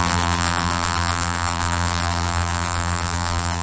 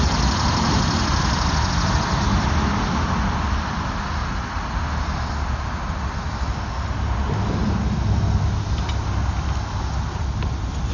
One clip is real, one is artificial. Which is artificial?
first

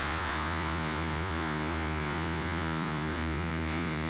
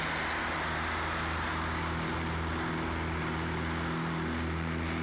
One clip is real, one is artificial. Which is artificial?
first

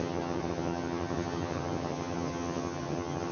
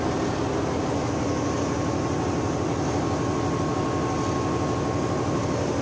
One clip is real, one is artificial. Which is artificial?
first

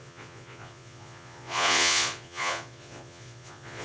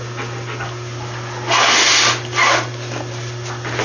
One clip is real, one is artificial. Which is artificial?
first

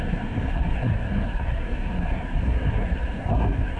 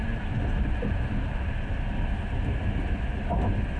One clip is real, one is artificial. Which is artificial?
first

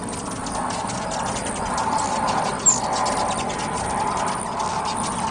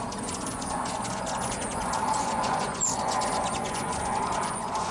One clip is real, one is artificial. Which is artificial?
second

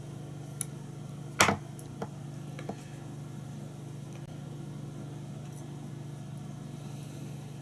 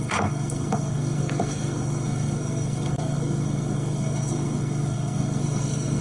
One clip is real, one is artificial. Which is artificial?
second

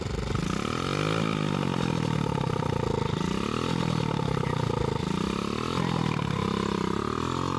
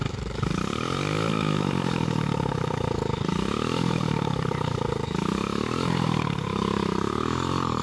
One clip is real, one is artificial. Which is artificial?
second